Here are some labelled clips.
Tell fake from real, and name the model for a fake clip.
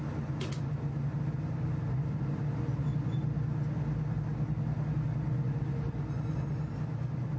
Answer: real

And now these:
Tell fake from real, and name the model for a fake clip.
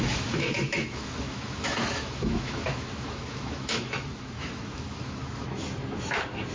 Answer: fake, autoencoder, DAC-VAE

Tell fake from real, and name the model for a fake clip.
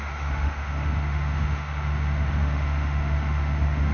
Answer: fake, autoencoder, DAC-VAE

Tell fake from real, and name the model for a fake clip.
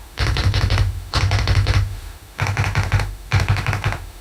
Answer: fake, autoencoder, DAC-VAE